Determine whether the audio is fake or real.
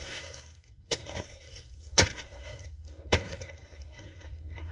fake